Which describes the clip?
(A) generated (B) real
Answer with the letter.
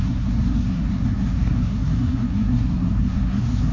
A